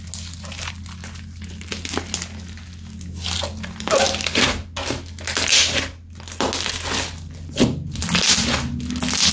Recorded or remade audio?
recorded